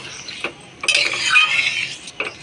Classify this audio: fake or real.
real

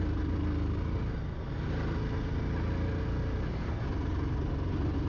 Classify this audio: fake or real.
real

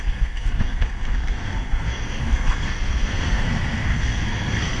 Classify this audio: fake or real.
fake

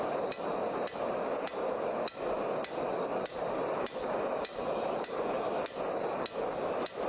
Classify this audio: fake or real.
real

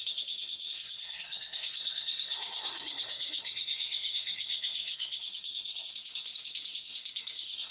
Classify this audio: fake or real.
fake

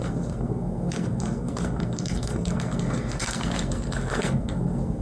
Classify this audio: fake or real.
fake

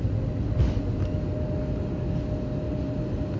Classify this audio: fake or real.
real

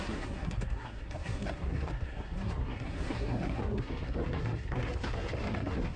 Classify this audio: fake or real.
fake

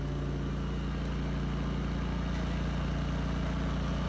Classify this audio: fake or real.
real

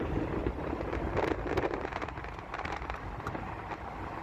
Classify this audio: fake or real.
real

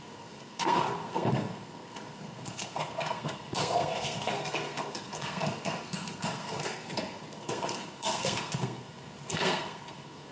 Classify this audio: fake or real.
fake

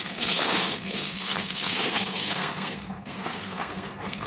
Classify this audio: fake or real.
fake